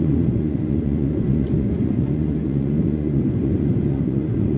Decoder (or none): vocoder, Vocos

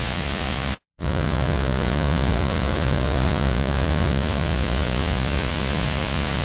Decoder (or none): vocoder, Vocos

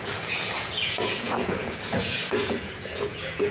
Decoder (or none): vocoder, Vocos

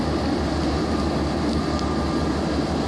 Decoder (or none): none